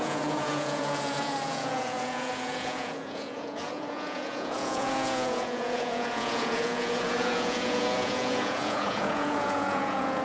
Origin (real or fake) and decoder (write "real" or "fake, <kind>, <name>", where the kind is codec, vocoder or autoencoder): fake, vocoder, Vocos